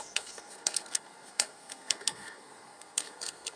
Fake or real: fake